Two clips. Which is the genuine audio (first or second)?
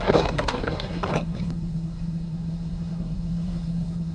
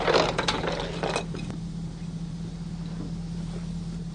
second